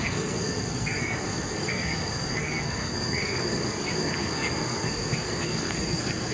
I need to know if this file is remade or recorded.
remade